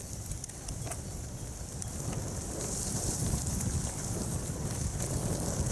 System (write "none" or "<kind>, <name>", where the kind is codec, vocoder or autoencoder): none